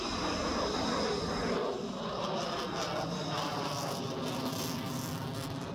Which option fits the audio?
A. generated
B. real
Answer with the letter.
B